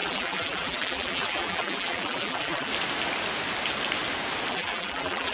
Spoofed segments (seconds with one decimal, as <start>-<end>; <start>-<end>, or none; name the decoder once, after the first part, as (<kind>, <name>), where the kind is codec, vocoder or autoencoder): 0.0-2.7 (vocoder, BigVGAN v2); 4.5-5.3